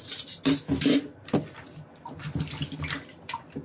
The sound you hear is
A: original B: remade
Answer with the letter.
A